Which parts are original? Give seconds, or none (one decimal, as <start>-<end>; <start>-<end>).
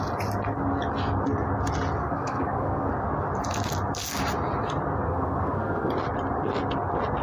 0.0-2.0; 2.9-5.1; 5.9-7.2